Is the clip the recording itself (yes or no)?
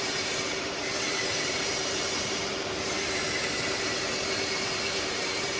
no